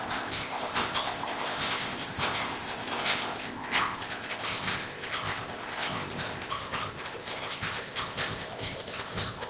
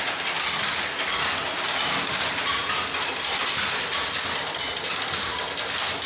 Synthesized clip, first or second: first